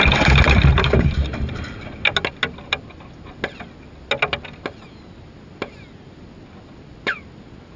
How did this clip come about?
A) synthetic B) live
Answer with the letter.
B